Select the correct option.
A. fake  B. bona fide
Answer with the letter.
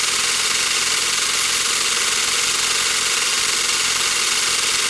B